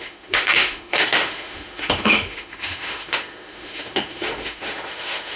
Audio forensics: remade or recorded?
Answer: remade